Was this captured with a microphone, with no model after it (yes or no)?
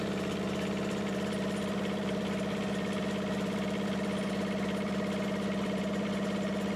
no